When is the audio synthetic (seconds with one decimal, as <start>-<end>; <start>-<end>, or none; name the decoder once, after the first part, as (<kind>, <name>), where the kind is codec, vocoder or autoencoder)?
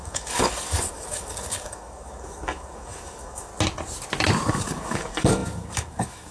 0.0-3.5 (codec, DAC); 4.5-6.3